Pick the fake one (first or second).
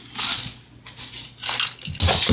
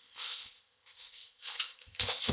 second